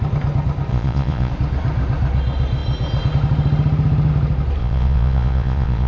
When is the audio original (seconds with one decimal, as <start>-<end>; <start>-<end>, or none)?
0.0-0.7; 1.3-4.6